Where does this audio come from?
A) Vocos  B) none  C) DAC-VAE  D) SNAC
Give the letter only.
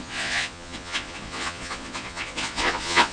A